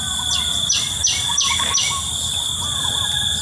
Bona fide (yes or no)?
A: yes